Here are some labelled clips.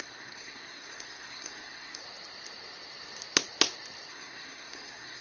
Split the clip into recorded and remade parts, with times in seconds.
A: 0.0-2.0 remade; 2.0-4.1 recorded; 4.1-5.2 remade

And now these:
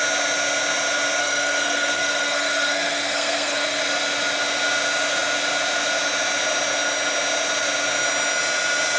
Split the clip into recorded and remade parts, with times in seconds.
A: 0.0-1.2 recorded; 1.2-3.8 remade; 3.8-9.0 recorded

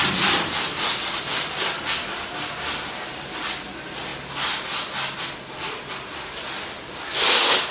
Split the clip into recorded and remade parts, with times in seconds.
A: 0.0-7.7 recorded

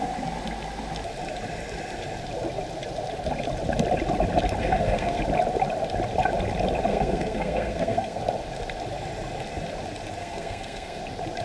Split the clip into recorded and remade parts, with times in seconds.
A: 0.0-4.6 recorded; 4.6-5.2 remade; 5.2-6.9 recorded; 6.9-8.2 remade; 8.2-10.2 recorded; 10.2-11.0 remade; 11.0-11.4 recorded

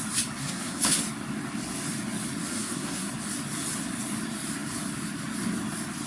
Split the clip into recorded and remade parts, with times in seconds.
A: 0.0-0.4 recorded; 0.4-1.0 remade; 1.0-2.5 recorded; 2.5-3.1 remade; 3.1-6.1 recorded

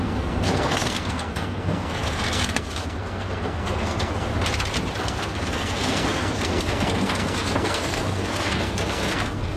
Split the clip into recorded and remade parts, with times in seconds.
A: 0.0-4.3 remade; 4.3-5.0 recorded; 5.0-9.6 remade

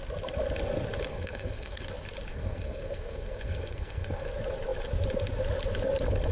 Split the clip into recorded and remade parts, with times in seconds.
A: 0.0-1.1 recorded; 1.1-1.8 remade; 1.8-2.3 recorded; 2.3-4.3 remade; 4.3-6.3 recorded

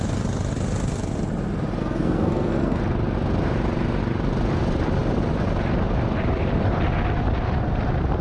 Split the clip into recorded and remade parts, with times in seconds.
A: 0.0-1.8 recorded; 1.8-2.8 remade; 2.8-8.2 recorded